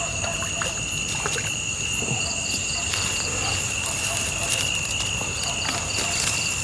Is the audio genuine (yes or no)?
yes